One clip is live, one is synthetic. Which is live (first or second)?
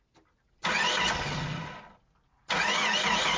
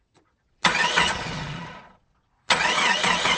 first